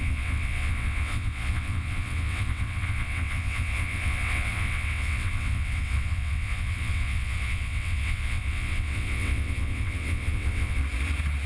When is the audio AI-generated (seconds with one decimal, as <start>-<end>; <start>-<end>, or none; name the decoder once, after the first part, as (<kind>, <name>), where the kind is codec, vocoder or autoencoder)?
0.0-10.8 (vocoder, WaveNeXt)